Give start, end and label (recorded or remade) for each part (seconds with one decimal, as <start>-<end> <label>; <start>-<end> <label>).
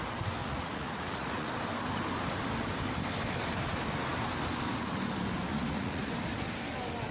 0.0-0.4 recorded; 0.4-1.5 remade; 1.5-5.5 recorded; 5.5-6.1 remade; 6.1-7.1 recorded